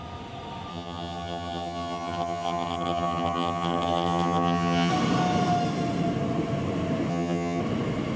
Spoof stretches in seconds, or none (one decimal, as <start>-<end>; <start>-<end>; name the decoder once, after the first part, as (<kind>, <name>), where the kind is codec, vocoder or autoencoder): 0.7-4.9 (vocoder, HiFi-GAN); 7.1-7.6

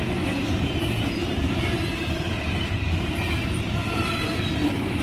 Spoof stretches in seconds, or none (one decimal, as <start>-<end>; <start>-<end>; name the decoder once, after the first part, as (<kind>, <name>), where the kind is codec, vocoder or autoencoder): 1.2-4.1 (vocoder, BigVGAN v2)

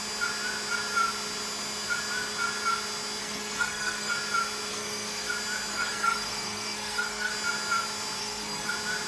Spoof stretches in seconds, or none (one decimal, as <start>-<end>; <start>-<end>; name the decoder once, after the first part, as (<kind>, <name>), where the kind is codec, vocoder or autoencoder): 3.2-4.1 (codec, SNAC); 4.7-5.3; 5.7-7.3; 8.2-8.7

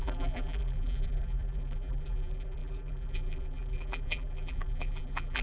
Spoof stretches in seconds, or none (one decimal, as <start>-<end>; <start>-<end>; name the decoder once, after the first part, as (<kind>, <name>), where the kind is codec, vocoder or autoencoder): 0.0-5.4 (vocoder, BigVGAN v2)

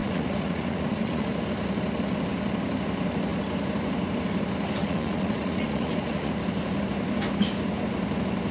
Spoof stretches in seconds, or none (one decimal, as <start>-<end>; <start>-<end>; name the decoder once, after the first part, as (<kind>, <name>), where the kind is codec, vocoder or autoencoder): 0.0-1.3 (vocoder, Vocos); 4.8-6.3

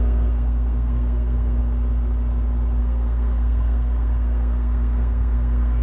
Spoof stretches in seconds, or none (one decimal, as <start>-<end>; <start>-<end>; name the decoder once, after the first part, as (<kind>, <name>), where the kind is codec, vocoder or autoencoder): 0.0-1.6 (codec, SNAC); 2.8-5.8